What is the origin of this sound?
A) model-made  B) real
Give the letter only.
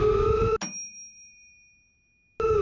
B